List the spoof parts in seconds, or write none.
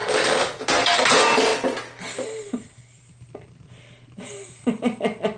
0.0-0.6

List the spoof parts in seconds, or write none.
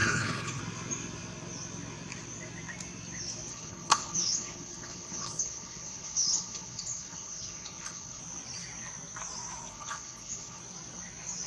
0.0-0.6; 3.5-8.2; 9.7-10.6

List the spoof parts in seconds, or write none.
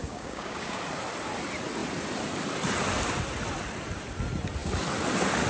0.0-0.8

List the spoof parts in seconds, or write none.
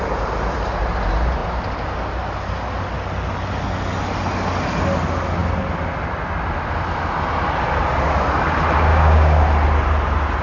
8.9-9.4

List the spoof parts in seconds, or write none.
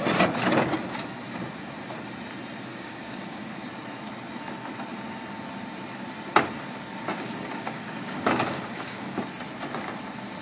2.7-3.6; 7.1-9.2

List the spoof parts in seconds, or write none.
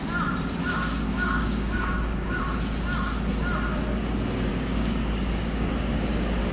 0.6-2.4; 4.5-5.7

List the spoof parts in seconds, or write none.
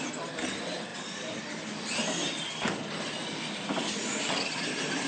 none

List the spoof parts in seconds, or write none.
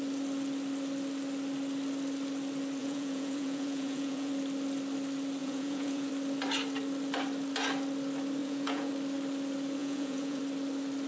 2.8-4.3; 5.4-6.1; 8.4-8.9; 9.8-10.4